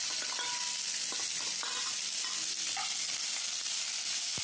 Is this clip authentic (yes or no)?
yes